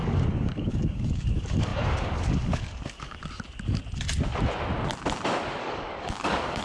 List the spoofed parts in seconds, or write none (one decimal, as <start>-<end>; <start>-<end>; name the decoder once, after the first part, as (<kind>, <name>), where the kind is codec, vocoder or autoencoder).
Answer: 0.0-3.2 (codec, DAC); 5.6-6.6